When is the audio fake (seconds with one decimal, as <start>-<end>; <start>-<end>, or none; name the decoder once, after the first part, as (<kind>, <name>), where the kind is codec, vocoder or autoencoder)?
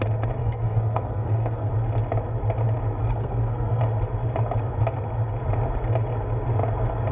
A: 0.4-1.7 (codec, SNAC); 3.0-3.8